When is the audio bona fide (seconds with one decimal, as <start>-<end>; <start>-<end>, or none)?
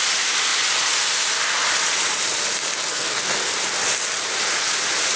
0.0-2.9; 3.5-5.2